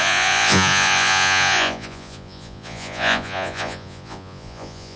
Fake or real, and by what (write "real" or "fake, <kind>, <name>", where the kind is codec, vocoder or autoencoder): fake, vocoder, Vocos